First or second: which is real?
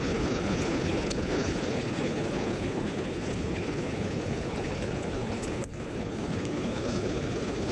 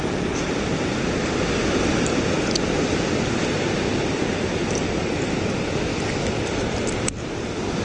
second